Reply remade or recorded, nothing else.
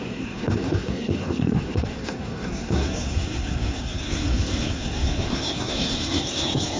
remade